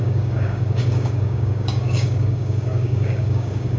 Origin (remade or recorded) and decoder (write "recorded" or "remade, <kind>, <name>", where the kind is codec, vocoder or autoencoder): remade, codec, DAC